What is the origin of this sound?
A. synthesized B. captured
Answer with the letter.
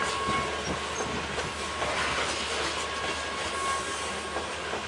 B